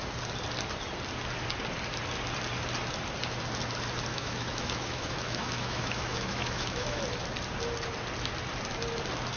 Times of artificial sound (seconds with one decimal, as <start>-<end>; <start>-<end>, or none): 4.1-7.0